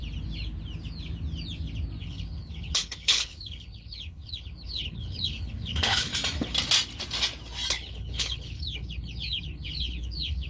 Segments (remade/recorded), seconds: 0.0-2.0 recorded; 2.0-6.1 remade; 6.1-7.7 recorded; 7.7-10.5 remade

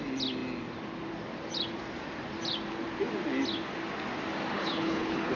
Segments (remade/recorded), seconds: 0.0-4.5 recorded; 4.5-5.4 remade

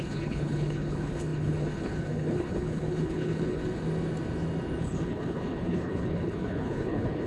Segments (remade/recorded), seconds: 0.0-3.6 remade; 3.6-4.8 recorded; 4.8-7.3 remade

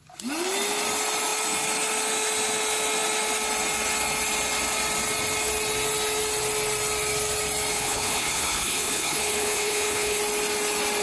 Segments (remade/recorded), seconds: 0.0-7.7 recorded; 7.7-10.2 remade; 10.2-11.0 recorded

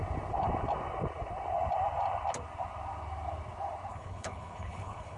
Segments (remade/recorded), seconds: 0.0-3.9 recorded; 3.9-5.2 remade